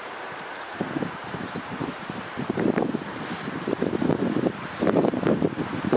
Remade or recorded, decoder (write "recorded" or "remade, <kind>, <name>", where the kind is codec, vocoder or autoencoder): remade, vocoder, BigVGAN v2